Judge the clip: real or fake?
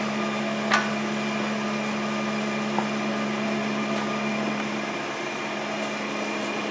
real